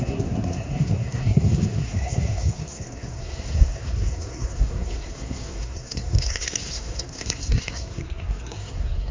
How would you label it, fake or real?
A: fake